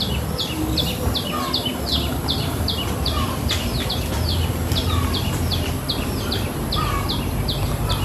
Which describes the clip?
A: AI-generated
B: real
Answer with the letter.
B